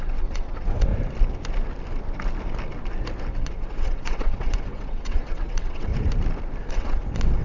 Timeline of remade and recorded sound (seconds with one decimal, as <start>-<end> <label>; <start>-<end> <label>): 0.0-0.9 remade; 0.9-3.3 recorded; 3.3-5.9 remade; 5.9-6.7 recorded; 6.7-7.4 remade